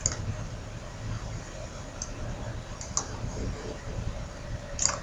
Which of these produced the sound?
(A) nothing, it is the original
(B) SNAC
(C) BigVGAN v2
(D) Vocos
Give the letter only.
A